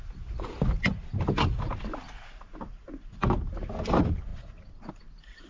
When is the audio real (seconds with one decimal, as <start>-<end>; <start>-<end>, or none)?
0.0-5.5